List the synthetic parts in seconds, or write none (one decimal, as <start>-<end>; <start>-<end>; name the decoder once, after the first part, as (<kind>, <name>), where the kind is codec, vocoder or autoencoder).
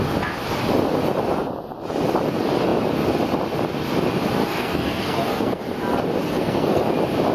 4.4-5.6 (codec, SNAC); 6.2-6.8